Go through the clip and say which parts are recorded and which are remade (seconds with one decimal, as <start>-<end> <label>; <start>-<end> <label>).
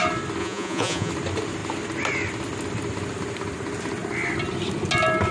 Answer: 0.0-0.4 recorded; 0.4-1.1 remade; 1.1-5.3 recorded